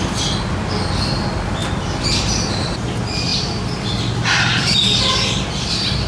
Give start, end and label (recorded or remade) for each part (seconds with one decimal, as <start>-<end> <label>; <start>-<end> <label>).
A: 0.0-1.6 recorded; 1.6-2.9 remade; 2.9-4.5 recorded; 4.5-5.0 remade; 5.0-6.1 recorded

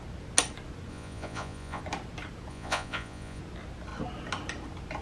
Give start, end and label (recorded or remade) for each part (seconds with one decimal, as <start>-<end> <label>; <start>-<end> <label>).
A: 0.0-0.9 recorded; 0.9-1.8 remade; 1.8-2.5 recorded; 2.5-3.4 remade; 3.4-5.0 recorded

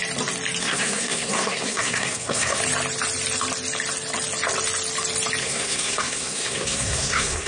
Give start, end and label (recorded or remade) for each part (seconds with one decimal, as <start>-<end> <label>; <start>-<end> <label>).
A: 0.0-0.6 recorded; 0.6-2.6 remade; 2.6-5.4 recorded; 5.4-7.5 remade

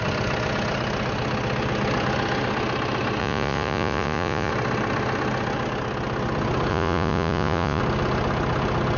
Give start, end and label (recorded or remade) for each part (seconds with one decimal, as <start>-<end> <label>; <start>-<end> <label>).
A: 0.0-3.2 recorded; 3.2-4.5 remade; 4.5-6.7 recorded; 6.7-7.8 remade; 7.8-9.0 recorded